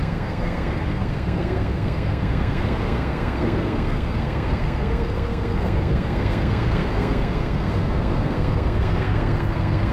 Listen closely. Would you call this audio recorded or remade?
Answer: remade